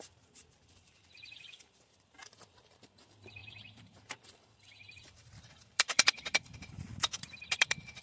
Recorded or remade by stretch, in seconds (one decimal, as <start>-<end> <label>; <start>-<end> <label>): 0.0-8.0 remade